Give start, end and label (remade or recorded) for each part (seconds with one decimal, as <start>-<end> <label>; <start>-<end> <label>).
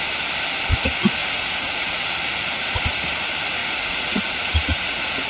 0.0-1.2 recorded; 1.2-2.0 remade; 2.0-3.6 recorded; 3.6-5.3 remade